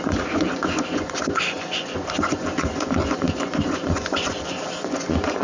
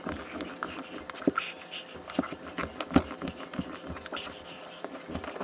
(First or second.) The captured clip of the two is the second